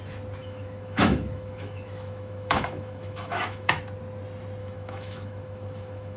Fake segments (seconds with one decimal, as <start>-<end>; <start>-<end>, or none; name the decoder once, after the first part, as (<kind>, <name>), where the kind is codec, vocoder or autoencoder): 0.4-3.8 (autoencoder, DAC-VAE); 4.6-6.2